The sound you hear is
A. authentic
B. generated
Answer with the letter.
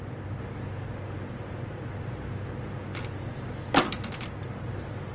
A